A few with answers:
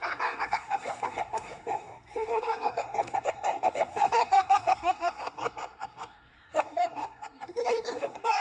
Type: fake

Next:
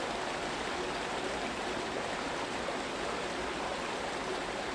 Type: real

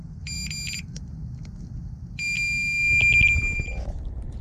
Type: real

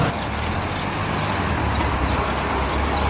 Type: real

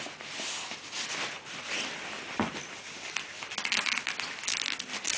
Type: real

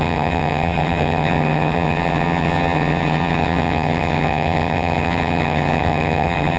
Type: fake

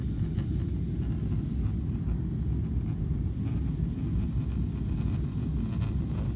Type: real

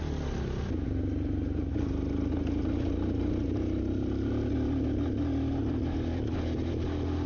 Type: real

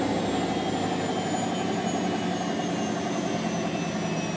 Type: real